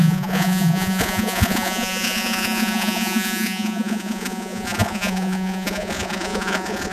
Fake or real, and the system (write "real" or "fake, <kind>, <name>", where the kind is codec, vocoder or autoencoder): fake, vocoder, Vocos